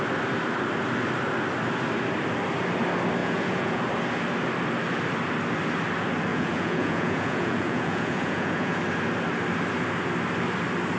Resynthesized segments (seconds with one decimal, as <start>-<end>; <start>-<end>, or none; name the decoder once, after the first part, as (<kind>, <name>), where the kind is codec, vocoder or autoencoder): 3.2-3.8 (vocoder, Vocos); 6.3-8.8